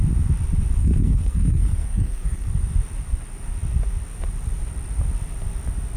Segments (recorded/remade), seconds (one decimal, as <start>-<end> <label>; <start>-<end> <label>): 0.0-0.8 recorded; 0.8-2.5 remade; 2.5-6.0 recorded